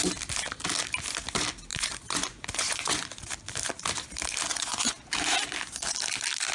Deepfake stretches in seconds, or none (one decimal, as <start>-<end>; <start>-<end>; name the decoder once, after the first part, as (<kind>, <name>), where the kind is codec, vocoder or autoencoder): 1.7-3.1 (vocoder, Vocos); 4.5-5.0